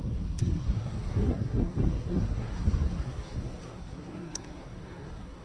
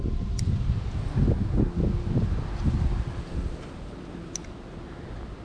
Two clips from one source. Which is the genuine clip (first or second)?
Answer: second